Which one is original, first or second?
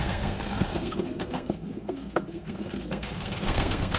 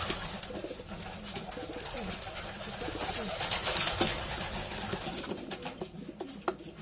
second